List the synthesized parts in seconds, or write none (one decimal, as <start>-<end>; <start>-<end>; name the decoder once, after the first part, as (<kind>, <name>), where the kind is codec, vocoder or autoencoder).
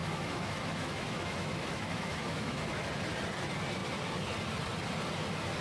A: 0.0-2.9 (autoencoder, DAC-VAE)